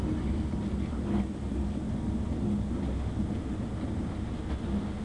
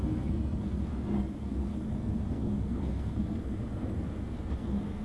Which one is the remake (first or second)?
second